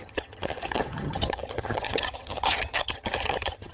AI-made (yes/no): yes